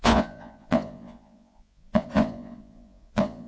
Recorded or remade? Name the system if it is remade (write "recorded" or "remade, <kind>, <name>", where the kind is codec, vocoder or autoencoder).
remade, vocoder, Vocos